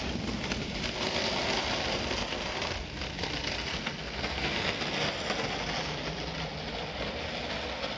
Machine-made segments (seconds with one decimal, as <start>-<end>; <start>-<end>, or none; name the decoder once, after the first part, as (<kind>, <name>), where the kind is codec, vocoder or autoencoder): 3.7-4.6 (codec, SNAC)